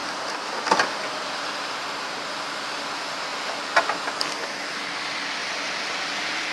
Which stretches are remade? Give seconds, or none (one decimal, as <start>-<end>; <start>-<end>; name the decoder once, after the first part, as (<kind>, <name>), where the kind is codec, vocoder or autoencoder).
0.0-2.2 (vocoder, BigVGAN v2); 5.4-6.5

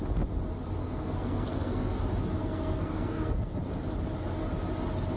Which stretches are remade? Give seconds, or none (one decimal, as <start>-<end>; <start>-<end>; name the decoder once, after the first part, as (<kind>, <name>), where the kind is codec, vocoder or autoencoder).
0.8-2.0 (codec, SNAC); 2.4-3.6

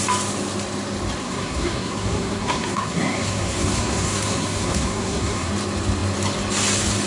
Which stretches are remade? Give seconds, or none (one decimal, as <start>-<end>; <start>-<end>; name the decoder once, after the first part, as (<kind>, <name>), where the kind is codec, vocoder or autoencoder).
1.2-5.5 (codec, SNAC)